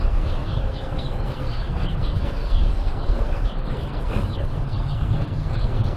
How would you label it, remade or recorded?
remade